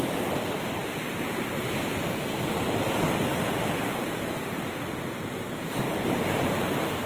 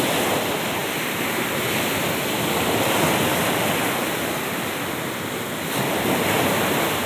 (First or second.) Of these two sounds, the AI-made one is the first